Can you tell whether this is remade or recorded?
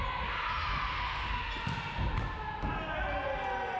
recorded